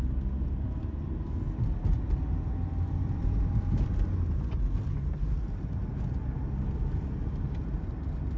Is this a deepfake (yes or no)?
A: no